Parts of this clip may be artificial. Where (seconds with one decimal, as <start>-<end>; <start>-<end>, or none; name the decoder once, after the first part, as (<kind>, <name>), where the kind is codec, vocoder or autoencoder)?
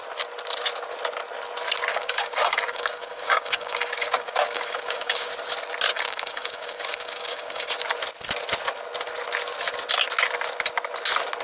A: 1.9-5.3 (codec, DAC); 5.9-7.7